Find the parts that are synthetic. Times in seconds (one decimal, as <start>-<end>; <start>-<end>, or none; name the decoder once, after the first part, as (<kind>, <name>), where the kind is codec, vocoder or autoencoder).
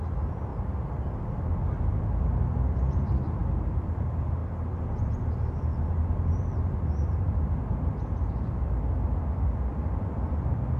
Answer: 0.0-0.5 (vocoder, BigVGAN v2); 1.8-4.4; 8.3-10.8